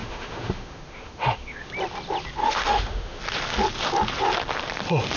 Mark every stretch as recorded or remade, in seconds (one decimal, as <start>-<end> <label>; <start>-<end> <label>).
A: 0.0-1.7 remade; 1.7-2.4 recorded; 2.4-3.2 remade; 3.2-5.2 recorded

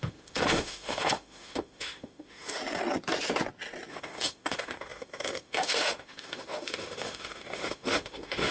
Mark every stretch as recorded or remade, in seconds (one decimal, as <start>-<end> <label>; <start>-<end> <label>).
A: 0.0-2.6 remade; 2.6-3.9 recorded; 3.9-8.5 remade